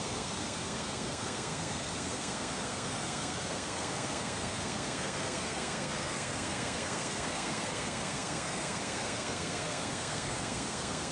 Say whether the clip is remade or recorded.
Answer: remade